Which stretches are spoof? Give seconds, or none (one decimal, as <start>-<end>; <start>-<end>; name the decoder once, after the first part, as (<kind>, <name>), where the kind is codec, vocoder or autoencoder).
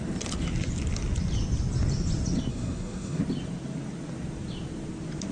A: 2.5-3.2 (codec, SNAC)